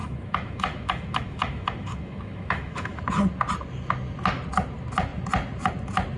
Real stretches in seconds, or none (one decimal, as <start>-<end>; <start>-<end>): 3.0-6.2

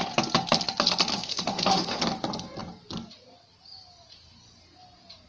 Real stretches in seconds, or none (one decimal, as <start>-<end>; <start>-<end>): 0.0-1.1; 2.0-5.3

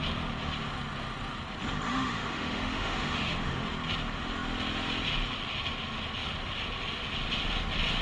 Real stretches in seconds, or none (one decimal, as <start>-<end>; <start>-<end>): 0.0-1.9; 3.7-8.0

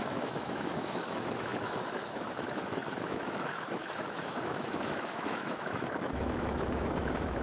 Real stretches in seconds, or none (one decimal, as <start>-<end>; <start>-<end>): none

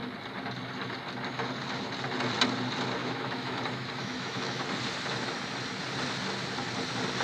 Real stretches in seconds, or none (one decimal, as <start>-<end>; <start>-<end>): 0.0-3.0; 3.6-4.0; 4.6-7.2

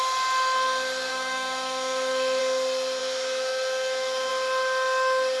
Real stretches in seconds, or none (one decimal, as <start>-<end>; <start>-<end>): 0.0-1.1; 2.4-3.0; 4.3-5.4

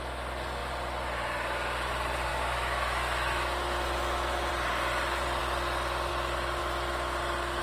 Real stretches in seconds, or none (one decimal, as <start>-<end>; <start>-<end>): 0.0-2.3; 4.5-7.6

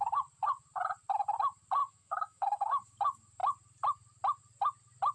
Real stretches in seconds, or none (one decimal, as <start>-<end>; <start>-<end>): 0.0-1.8; 2.7-5.1